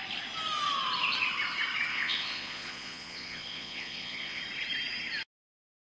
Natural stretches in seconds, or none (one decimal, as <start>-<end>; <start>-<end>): 0.0-1.9; 4.4-5.9